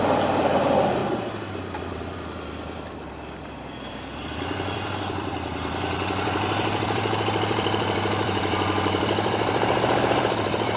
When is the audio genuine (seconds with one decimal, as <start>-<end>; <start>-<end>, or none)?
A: 1.0-1.5